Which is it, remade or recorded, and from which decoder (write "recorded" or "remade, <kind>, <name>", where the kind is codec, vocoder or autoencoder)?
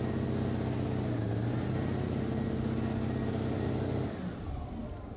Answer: recorded